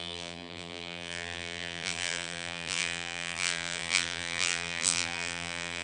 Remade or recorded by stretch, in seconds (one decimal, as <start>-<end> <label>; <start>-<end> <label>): 0.0-5.8 remade